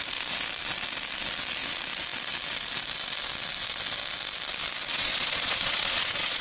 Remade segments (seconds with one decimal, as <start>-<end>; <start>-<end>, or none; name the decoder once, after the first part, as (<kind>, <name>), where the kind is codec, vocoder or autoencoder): 4.9-6.4 (vocoder, Vocos)